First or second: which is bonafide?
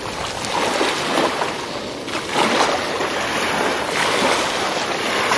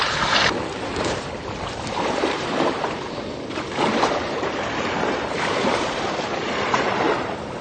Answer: first